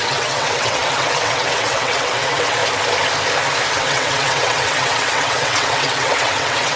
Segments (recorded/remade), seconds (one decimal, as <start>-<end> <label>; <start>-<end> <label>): 0.0-2.6 remade; 2.6-3.7 recorded; 3.7-6.8 remade